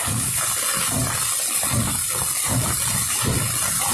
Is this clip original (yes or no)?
yes